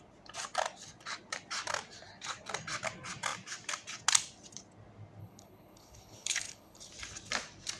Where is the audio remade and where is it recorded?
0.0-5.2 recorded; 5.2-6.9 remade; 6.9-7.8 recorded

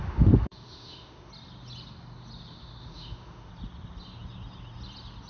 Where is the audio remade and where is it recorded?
0.0-1.3 remade; 1.3-2.8 recorded; 2.8-3.5 remade; 3.5-5.3 recorded

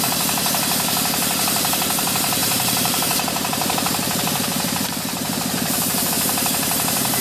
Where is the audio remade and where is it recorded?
0.0-2.4 recorded; 2.4-6.1 remade; 6.1-7.2 recorded

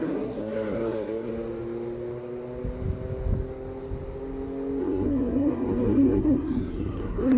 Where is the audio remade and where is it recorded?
0.0-1.3 remade; 1.3-4.8 recorded; 4.8-7.4 remade

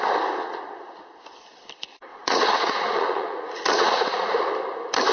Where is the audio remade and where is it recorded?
0.0-0.4 recorded; 0.4-1.2 remade; 1.2-2.1 recorded; 2.1-4.5 remade; 4.5-5.1 recorded

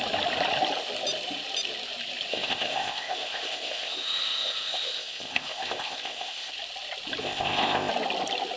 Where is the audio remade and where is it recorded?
0.0-2.3 recorded; 2.3-6.5 remade; 6.5-7.2 recorded; 7.2-7.9 remade; 7.9-8.6 recorded

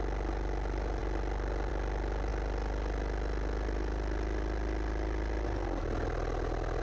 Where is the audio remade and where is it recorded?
0.0-6.8 recorded